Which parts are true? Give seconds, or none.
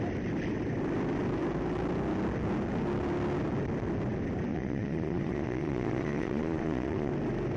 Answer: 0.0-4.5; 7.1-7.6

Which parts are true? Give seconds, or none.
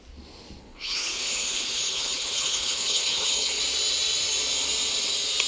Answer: 0.0-0.6; 3.6-5.5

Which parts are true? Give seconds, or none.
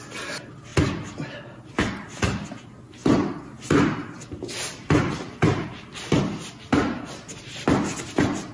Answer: 0.0-3.0; 3.8-4.7; 6.2-8.5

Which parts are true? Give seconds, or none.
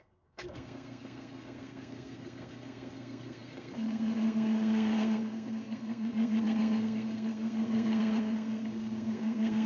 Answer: none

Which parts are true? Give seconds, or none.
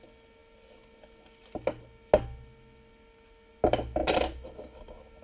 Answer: 0.0-5.2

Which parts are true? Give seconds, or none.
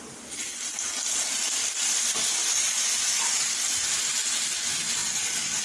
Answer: 0.0-5.6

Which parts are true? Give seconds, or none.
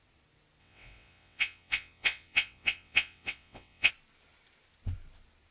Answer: 0.0-0.6; 3.9-5.5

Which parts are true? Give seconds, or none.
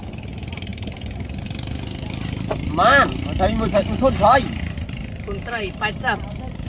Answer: 0.0-6.7